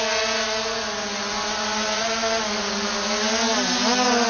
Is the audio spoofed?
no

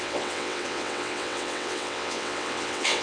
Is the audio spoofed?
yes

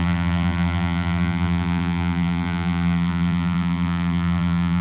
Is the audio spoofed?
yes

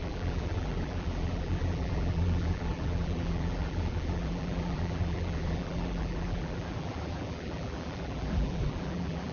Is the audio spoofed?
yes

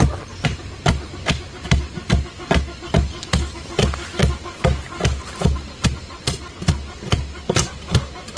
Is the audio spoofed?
no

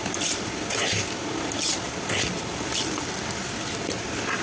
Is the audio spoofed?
no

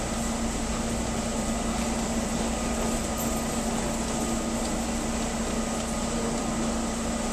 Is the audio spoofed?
no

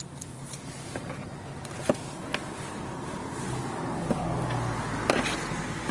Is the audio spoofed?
no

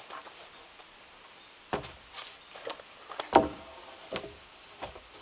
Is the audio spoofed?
no